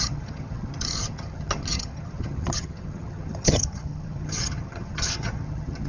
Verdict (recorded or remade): remade